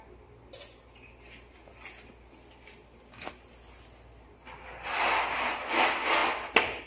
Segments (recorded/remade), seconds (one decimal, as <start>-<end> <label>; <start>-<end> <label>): 0.0-6.9 recorded